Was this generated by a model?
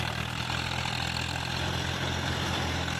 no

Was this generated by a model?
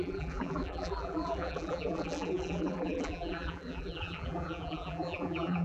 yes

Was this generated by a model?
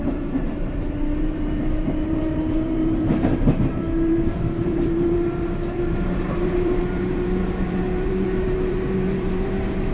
yes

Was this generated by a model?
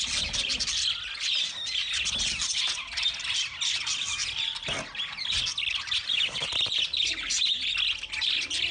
no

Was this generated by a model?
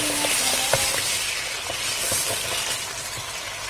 no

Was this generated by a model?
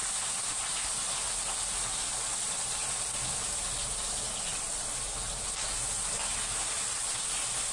no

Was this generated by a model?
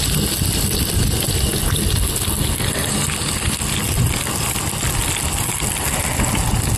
no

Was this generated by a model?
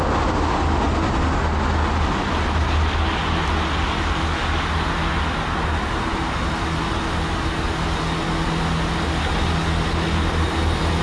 no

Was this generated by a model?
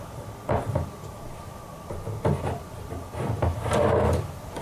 no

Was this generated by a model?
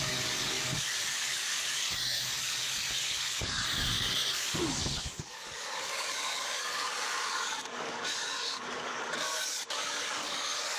yes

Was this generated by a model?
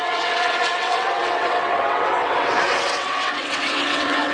yes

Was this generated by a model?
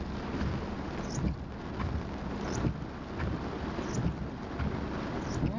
no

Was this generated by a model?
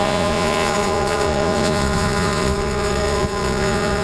yes